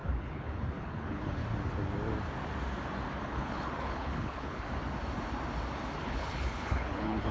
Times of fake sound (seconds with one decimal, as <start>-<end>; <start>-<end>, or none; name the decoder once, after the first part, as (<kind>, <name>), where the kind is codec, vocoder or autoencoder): 0.0-1.4 (codec, HILCodec); 3.2-4.8; 6.0-7.3